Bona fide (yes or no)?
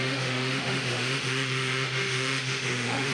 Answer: no